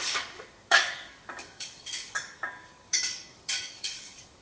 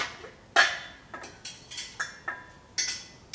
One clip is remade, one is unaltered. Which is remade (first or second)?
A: first